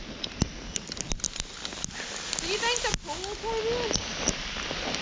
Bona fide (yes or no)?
yes